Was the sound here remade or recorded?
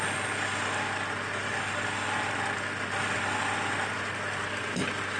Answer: recorded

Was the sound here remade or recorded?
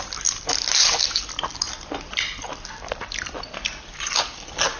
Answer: recorded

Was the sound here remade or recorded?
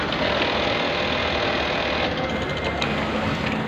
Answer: recorded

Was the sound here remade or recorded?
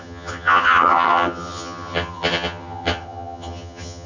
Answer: remade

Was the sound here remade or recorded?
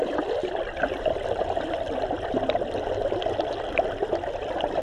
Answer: recorded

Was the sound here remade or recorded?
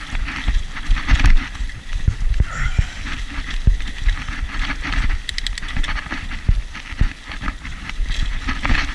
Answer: recorded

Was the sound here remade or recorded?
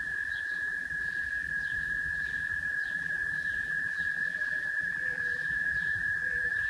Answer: remade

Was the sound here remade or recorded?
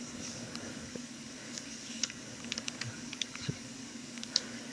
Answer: remade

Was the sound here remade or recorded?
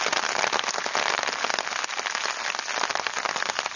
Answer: recorded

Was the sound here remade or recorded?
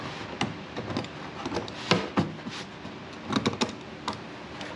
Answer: recorded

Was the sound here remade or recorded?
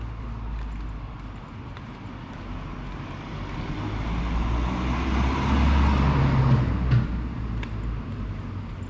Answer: recorded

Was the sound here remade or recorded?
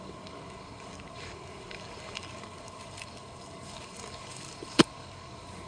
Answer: remade